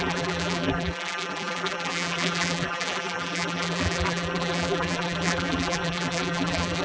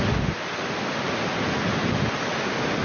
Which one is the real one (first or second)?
second